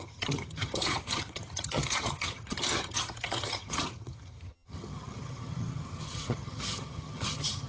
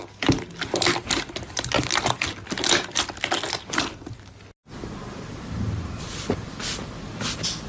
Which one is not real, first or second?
first